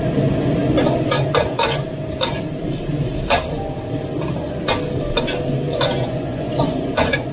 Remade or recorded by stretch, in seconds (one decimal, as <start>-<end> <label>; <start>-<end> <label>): 0.0-5.7 recorded; 5.7-7.3 remade